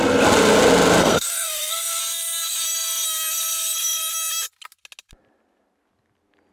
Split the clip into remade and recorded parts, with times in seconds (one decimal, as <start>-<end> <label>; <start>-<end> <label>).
0.0-1.0 recorded; 1.0-2.0 remade; 2.0-6.5 recorded